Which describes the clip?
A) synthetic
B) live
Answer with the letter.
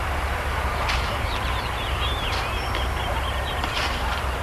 A